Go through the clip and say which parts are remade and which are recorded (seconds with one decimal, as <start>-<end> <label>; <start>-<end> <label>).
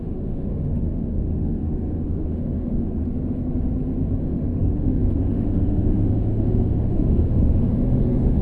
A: 0.0-3.0 remade; 3.0-4.2 recorded; 4.2-8.4 remade